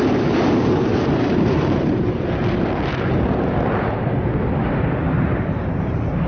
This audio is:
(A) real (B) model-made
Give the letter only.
B